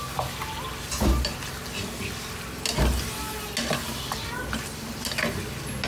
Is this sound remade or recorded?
recorded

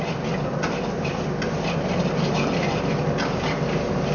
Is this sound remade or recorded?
recorded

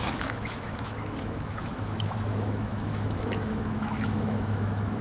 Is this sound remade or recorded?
remade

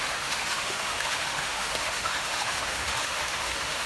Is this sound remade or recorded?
remade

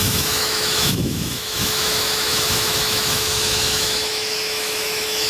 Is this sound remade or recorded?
remade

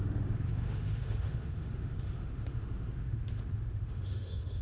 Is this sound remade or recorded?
remade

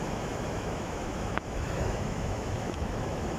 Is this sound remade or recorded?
remade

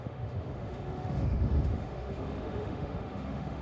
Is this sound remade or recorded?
remade